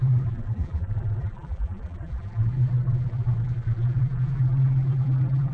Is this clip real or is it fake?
fake